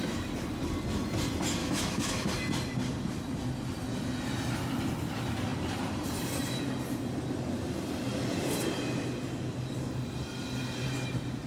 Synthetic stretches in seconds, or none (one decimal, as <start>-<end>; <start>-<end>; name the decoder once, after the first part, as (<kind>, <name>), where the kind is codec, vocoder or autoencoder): 1.6-2.3 (autoencoder, DAC-VAE)